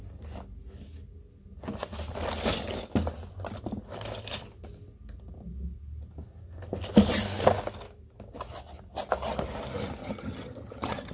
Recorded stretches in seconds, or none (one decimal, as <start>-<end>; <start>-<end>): 0.0-10.0

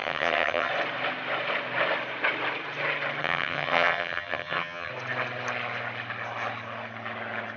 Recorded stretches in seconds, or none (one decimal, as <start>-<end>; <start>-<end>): 0.7-3.2; 4.9-7.6

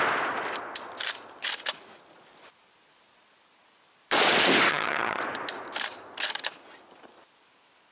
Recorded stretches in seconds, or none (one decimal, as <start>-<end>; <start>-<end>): 0.0-4.7; 5.2-7.9

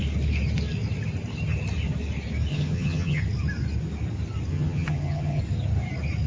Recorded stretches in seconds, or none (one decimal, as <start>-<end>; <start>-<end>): 0.0-2.5; 3.2-4.5; 5.4-6.3